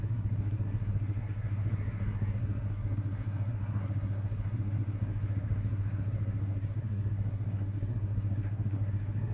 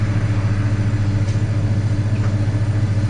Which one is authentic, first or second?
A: second